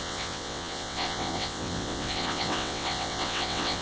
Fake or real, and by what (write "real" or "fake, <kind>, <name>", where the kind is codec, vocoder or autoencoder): fake, vocoder, WaveNeXt